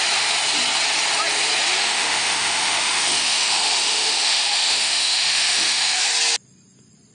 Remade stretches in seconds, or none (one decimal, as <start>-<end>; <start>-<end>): 1.8-6.1